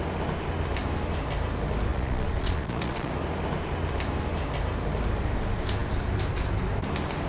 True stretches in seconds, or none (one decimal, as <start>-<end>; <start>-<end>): 0.0-1.9; 3.1-7.3